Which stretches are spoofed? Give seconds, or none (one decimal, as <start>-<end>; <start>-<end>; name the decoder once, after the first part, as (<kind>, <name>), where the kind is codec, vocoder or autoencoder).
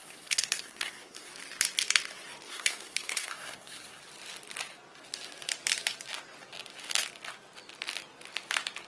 0.0-1.3 (codec, SNAC); 2.5-4.0